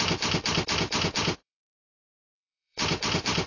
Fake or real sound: fake